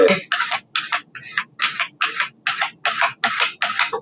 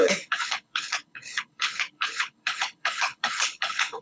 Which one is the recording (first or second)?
first